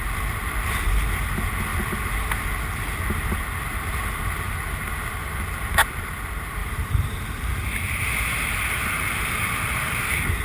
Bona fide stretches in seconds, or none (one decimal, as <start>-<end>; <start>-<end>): 0.0-6.6; 7.2-10.4